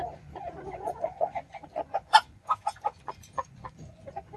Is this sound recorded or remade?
remade